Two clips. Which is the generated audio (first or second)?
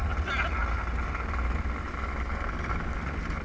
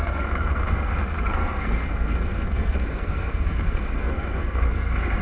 second